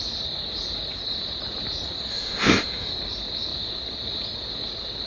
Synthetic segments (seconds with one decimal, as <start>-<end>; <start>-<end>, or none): 2.1-2.9

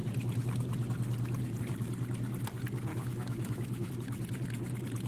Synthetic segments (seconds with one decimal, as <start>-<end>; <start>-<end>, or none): 2.9-3.9

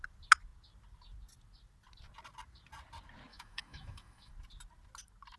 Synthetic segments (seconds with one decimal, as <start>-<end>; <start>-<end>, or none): 3.3-4.3